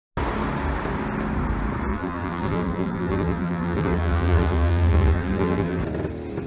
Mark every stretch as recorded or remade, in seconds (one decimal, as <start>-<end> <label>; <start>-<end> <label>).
0.0-1.9 recorded; 1.9-5.8 remade; 5.8-6.5 recorded